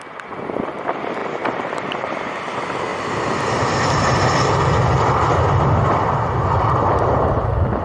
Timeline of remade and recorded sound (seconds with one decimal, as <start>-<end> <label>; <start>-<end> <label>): 0.0-1.2 recorded; 1.2-2.4 remade; 2.4-7.8 recorded